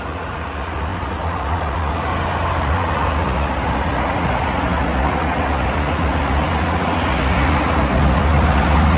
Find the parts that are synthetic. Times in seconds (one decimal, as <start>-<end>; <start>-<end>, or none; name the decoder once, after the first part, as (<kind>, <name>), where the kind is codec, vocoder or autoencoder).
0.0-2.1 (vocoder, Vocos); 2.6-9.0